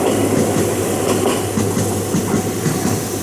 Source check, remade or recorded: recorded